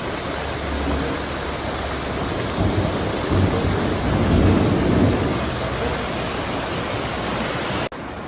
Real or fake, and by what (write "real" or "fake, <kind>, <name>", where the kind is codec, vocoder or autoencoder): real